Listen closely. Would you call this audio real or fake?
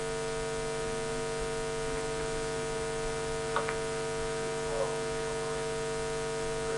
real